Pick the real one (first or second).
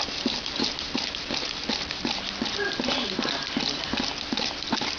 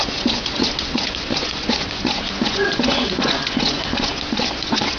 first